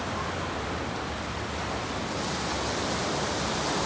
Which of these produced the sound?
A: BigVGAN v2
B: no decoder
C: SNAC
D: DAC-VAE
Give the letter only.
B